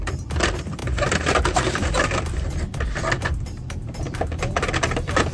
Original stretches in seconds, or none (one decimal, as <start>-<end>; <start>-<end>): none